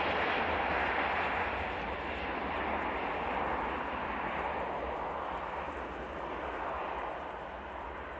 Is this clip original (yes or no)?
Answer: yes